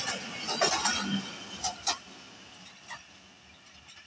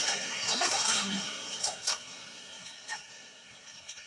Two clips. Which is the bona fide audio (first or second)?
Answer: first